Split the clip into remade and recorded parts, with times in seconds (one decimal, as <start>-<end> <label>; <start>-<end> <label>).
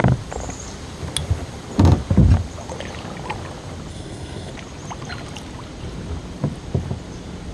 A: 0.0-3.9 recorded; 3.9-4.5 remade; 4.5-7.5 recorded